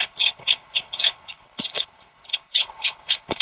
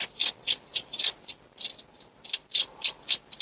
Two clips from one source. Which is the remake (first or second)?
first